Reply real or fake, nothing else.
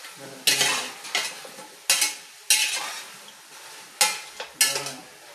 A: real